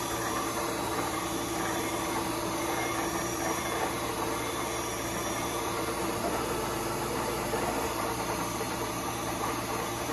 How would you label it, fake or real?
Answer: fake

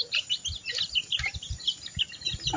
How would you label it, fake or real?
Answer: real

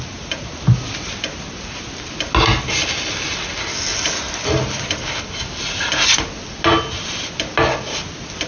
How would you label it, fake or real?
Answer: real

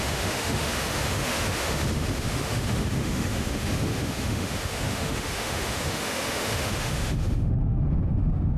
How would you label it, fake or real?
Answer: fake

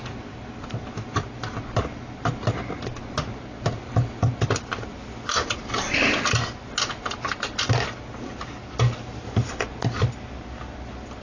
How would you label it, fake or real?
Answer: real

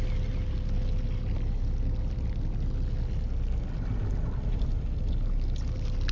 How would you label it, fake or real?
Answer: real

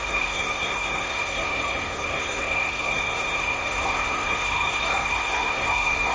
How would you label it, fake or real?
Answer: fake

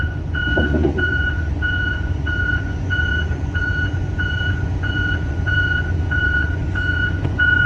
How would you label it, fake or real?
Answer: fake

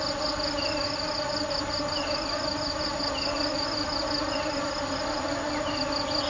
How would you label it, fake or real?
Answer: real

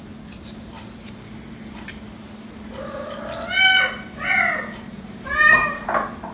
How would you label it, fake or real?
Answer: real